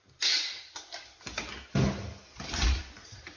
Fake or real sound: real